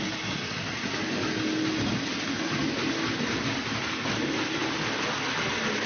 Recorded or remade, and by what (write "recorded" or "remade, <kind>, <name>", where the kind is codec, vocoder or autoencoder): recorded